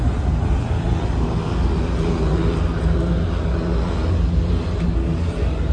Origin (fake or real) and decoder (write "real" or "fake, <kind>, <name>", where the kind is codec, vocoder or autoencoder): real